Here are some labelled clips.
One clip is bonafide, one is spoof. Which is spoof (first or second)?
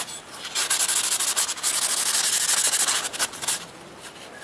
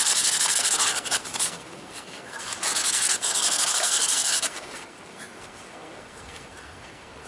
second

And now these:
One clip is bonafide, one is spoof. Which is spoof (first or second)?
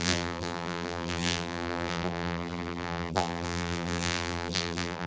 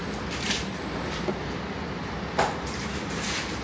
first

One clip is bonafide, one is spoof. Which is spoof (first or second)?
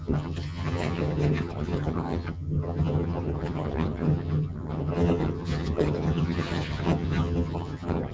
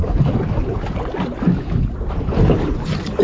first